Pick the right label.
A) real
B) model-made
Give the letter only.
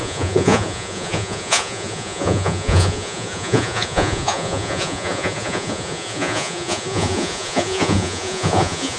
B